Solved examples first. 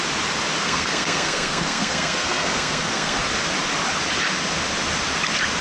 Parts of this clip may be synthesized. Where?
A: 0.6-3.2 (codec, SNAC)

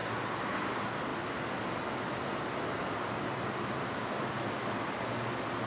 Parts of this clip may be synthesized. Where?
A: none

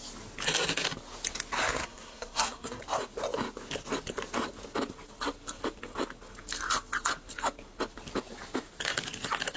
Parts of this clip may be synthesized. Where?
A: 1.8-2.8 (codec, SNAC)

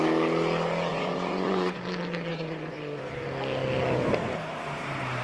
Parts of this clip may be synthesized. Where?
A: 0.9-1.8 (vocoder, Vocos); 2.3-3.1

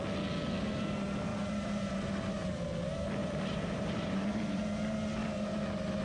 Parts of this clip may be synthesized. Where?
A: 1.3-2.1 (vocoder, BigVGAN v2); 3.2-4.6

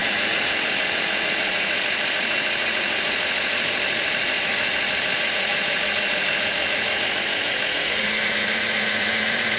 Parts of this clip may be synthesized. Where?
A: 0.0-9.6 (vocoder, Vocos)